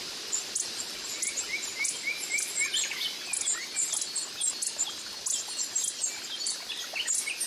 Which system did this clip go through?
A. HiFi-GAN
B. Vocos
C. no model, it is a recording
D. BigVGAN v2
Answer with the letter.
C